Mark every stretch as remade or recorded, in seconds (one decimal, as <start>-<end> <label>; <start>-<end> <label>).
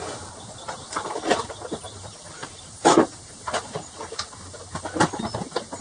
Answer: 0.0-2.4 recorded; 2.4-3.7 remade; 3.7-5.8 recorded